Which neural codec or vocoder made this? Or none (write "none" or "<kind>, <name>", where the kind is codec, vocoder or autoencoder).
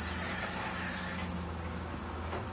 none